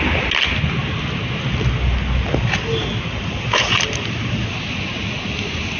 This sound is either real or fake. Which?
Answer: real